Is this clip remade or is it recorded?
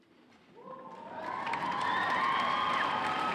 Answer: remade